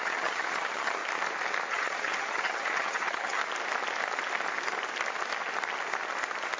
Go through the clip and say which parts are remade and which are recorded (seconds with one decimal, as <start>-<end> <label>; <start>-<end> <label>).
0.0-1.0 remade; 1.0-1.7 recorded; 1.7-3.4 remade; 3.4-6.6 recorded